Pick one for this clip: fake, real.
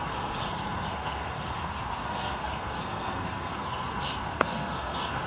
fake